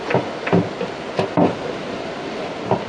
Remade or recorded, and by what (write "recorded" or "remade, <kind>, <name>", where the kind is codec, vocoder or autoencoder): recorded